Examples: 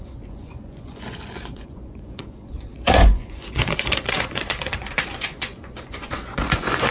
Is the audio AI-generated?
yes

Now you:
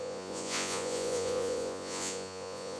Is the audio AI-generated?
yes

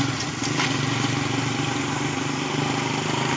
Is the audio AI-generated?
no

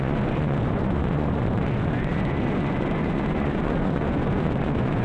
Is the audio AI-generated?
yes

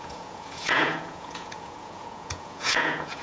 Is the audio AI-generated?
yes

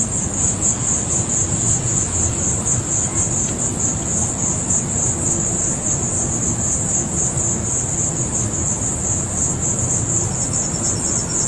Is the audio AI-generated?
no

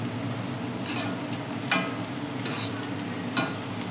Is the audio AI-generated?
no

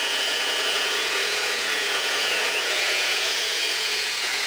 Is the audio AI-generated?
yes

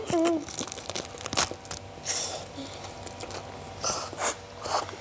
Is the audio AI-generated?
no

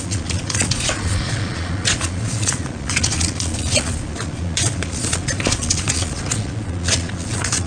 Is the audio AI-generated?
yes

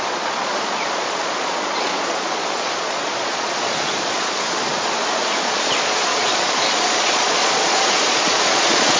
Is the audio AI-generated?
yes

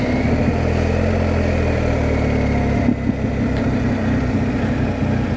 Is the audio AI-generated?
no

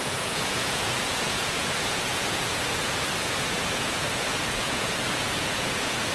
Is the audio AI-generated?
yes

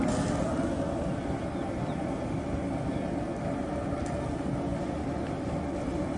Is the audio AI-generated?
no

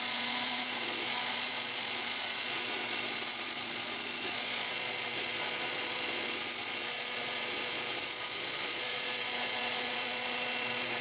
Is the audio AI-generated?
yes